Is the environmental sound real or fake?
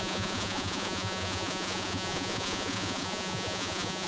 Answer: fake